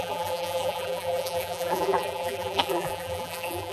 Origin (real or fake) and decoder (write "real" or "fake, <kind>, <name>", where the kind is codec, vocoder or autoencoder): fake, vocoder, BigVGAN v2